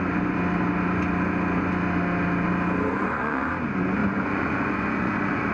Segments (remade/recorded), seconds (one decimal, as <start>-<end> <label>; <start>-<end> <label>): 0.0-2.9 recorded; 2.9-3.5 remade; 3.5-4.0 recorded; 4.0-5.5 remade